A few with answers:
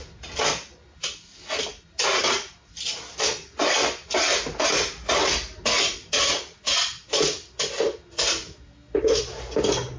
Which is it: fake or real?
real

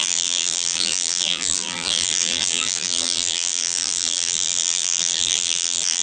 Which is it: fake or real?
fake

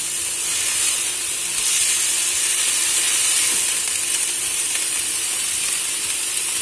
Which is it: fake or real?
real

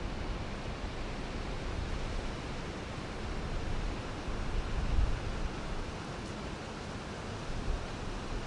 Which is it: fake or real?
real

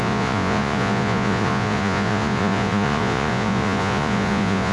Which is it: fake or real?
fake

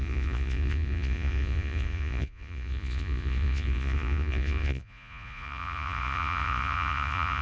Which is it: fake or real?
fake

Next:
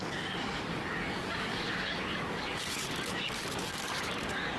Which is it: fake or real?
fake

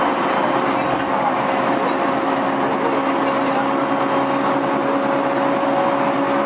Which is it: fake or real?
real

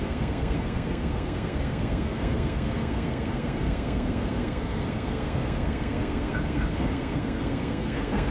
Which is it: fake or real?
fake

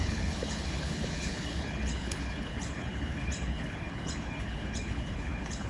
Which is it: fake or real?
fake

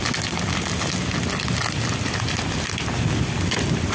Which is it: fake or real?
real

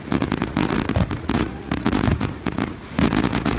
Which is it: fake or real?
fake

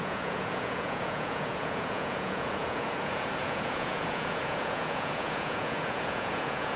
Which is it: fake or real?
fake